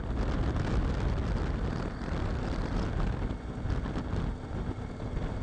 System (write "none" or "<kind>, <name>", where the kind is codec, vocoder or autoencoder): none